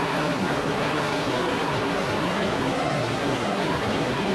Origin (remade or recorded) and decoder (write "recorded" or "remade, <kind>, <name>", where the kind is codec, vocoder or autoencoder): remade, codec, SNAC